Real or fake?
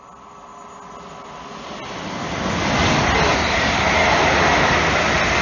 real